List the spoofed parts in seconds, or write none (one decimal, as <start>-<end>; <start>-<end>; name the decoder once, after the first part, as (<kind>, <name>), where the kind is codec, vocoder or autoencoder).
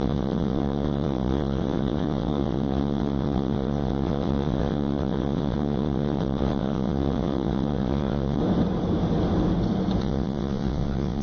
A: 0.0-8.4 (vocoder, WaveNeXt); 10.0-11.2